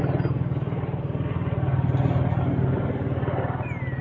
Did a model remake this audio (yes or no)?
no